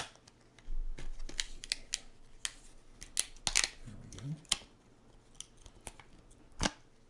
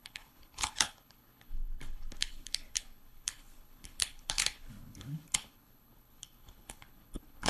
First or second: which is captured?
first